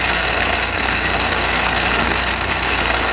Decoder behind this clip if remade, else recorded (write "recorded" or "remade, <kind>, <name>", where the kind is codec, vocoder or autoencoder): remade, codec, SNAC